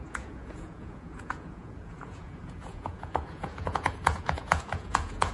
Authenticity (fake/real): fake